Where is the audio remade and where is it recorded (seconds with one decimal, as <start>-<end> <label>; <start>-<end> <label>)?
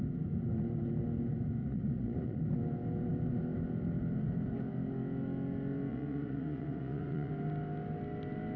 0.0-1.6 recorded; 1.6-2.4 remade; 2.4-5.9 recorded; 5.9-7.3 remade; 7.3-8.6 recorded